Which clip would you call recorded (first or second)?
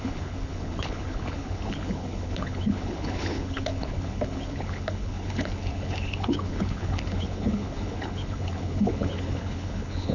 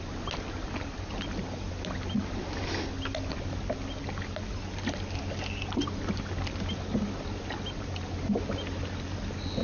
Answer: second